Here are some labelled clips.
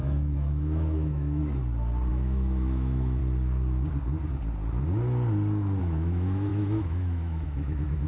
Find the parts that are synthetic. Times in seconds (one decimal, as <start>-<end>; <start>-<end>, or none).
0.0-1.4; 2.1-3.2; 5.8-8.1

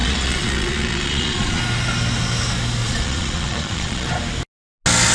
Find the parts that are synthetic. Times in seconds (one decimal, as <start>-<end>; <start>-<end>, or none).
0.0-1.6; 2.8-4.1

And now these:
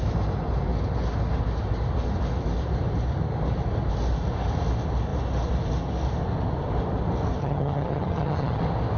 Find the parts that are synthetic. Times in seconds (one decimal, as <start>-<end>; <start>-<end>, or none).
7.4-8.6